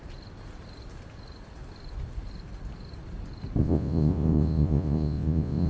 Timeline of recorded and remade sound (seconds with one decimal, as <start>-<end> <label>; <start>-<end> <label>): 0.0-3.6 recorded; 3.6-5.7 remade